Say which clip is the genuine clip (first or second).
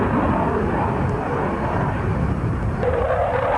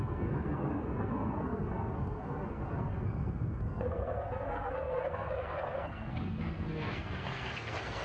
first